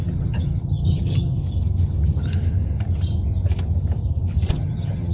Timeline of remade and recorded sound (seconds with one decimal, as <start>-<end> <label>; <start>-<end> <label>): 0.0-1.4 remade; 1.4-4.5 recorded; 4.5-5.1 remade